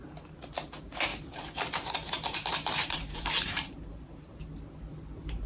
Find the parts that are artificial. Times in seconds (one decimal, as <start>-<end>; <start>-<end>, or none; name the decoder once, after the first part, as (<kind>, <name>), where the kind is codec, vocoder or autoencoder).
1.1-4.4 (vocoder, BigVGAN v2)